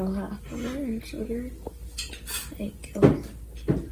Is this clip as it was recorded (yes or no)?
yes